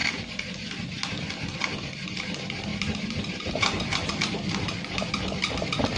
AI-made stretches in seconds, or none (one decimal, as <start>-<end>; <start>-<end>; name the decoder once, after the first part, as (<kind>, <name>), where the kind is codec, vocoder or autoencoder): none